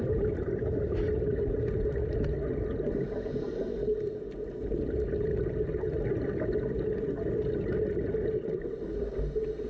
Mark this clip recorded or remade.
recorded